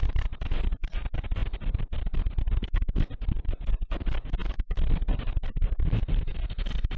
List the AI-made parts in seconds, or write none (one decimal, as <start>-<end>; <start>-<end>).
none